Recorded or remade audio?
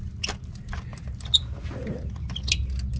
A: recorded